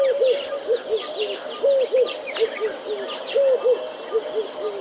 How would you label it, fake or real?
real